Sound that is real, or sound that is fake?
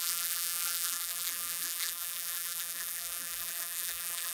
fake